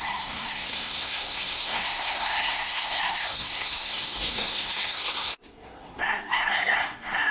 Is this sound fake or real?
fake